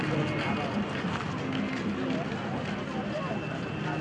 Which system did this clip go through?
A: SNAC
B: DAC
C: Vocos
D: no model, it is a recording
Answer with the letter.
D